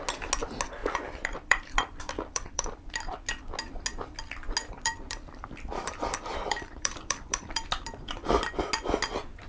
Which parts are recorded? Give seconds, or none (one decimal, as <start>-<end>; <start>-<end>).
0.0-0.8; 2.9-4.6; 8.5-9.5